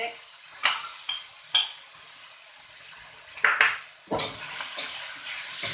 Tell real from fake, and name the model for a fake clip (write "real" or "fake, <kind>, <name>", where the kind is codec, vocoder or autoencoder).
real